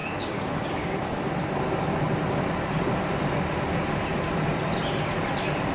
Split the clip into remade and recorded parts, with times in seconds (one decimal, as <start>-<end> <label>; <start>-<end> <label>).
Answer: 0.0-1.2 remade; 1.2-5.7 recorded